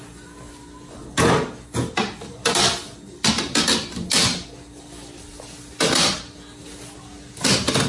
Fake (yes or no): no